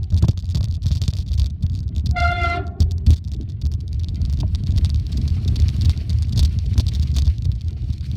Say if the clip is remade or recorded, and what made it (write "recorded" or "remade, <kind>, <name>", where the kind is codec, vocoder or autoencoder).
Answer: remade, vocoder, BigVGAN v2